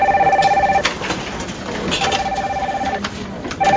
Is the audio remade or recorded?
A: remade